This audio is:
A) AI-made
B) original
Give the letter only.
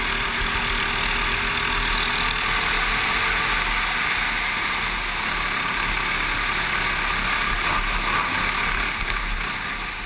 B